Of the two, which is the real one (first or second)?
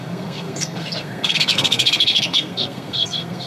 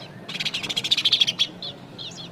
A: second